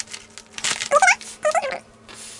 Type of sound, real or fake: real